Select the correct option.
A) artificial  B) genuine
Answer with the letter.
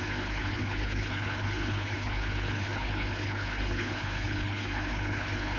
A